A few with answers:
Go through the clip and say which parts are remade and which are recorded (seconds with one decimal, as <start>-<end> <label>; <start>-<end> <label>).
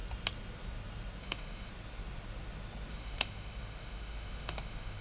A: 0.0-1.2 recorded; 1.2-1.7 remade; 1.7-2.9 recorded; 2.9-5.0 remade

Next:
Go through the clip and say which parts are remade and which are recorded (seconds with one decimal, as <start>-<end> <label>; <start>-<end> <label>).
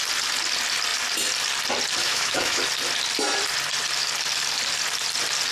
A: 0.0-2.0 recorded; 2.0-2.6 remade; 2.6-5.5 recorded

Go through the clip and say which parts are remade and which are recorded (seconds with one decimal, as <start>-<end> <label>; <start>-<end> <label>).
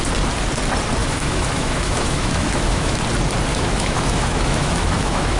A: 0.0-1.0 recorded; 1.0-3.0 remade; 3.0-3.5 recorded; 3.5-5.4 remade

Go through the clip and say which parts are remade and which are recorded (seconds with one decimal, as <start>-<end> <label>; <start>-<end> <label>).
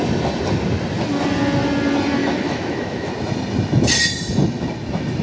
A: 0.0-2.2 recorded; 2.2-3.1 remade; 3.1-5.2 recorded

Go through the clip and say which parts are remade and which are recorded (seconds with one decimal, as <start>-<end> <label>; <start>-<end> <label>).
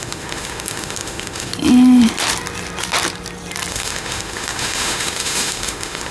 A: 0.0-1.5 remade; 1.5-3.7 recorded; 3.7-6.1 remade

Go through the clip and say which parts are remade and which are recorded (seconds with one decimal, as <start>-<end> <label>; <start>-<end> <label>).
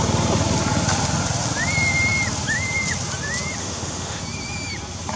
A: 0.0-3.6 recorded; 3.6-4.2 remade; 4.2-5.2 recorded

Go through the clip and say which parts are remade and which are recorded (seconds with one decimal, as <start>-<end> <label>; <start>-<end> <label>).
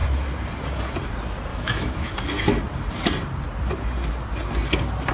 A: 0.0-1.5 recorded; 1.5-2.1 remade; 2.1-5.1 recorded